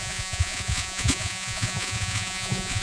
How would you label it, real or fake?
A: fake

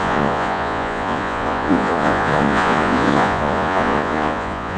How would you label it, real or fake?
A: fake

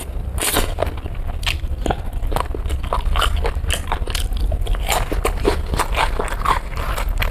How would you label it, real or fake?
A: real